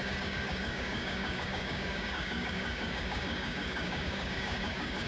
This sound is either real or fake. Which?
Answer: fake